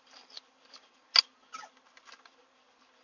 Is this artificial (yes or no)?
no